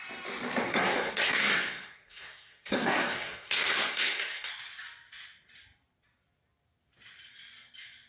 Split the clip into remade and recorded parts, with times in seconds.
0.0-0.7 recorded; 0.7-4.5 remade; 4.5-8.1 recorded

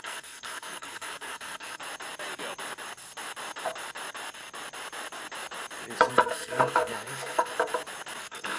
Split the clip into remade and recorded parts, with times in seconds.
0.0-1.8 remade; 1.8-6.1 recorded; 6.1-7.5 remade; 7.5-8.2 recorded; 8.2-8.6 remade

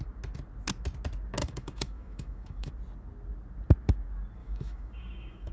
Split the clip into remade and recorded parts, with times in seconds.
0.0-1.4 recorded; 1.4-2.7 remade; 2.7-4.4 recorded; 4.4-5.5 remade